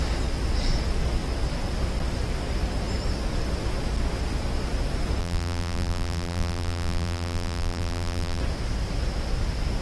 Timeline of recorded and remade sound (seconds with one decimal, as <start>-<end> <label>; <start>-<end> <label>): 0.0-5.2 recorded; 5.2-8.4 remade; 8.4-9.8 recorded